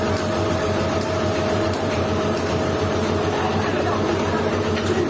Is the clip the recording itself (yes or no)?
no